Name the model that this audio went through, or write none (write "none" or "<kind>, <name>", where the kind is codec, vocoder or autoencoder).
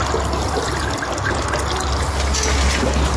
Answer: none